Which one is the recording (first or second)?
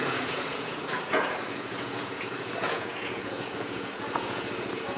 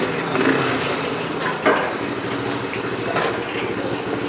second